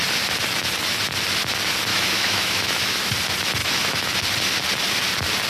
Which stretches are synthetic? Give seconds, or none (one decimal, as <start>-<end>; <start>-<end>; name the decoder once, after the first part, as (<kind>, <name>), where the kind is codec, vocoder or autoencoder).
1.9-3.1 (autoencoder, DAC-VAE); 3.6-4.1